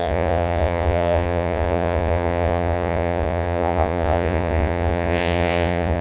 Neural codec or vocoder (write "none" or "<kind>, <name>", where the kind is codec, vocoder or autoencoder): vocoder, Vocos